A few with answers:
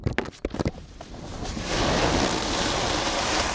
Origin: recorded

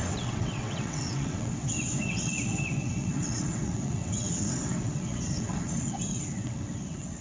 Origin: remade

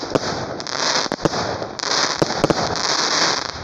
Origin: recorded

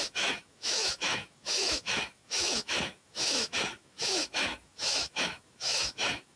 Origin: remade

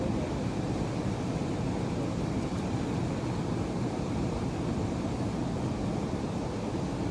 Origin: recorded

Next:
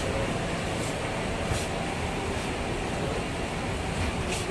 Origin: recorded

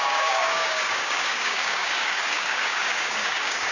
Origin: remade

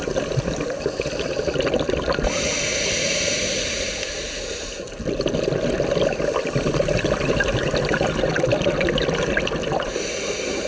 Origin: recorded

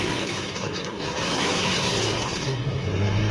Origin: remade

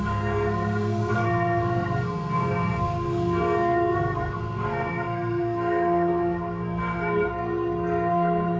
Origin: remade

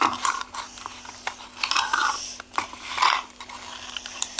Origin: remade